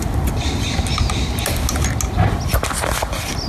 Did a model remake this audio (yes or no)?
no